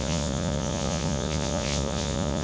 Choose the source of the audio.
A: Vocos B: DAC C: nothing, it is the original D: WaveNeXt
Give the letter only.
A